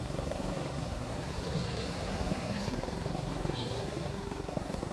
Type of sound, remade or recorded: remade